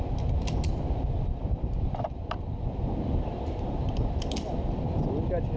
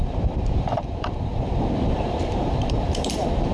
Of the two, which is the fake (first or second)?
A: second